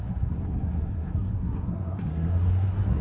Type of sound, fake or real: fake